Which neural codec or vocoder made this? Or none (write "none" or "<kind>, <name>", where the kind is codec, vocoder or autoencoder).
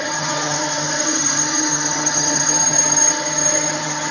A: vocoder, HiFi-GAN